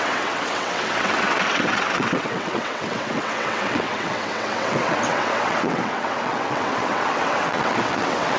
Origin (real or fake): fake